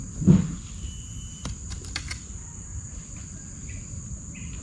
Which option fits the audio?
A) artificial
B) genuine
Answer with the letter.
A